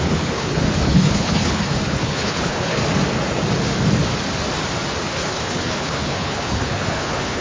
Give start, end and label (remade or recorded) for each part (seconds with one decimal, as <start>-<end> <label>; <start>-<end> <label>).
0.0-2.8 remade; 2.8-5.1 recorded; 5.1-7.4 remade